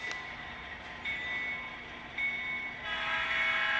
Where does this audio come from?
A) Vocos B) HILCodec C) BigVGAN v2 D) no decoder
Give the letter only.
D